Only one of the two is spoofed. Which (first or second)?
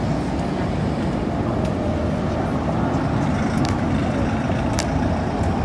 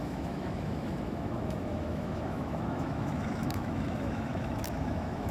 second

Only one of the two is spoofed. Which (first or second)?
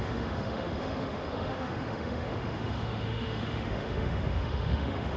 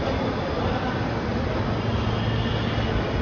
first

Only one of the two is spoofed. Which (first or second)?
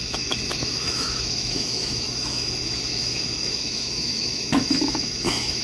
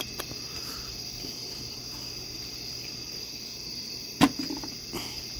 first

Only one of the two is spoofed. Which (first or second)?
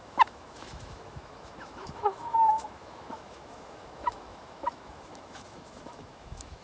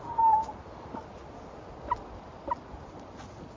first